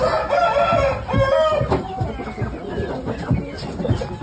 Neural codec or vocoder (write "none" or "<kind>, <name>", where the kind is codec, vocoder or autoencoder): none